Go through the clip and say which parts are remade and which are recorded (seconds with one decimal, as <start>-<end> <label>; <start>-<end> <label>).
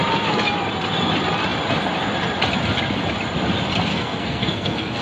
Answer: 0.0-3.9 recorded; 3.9-5.0 remade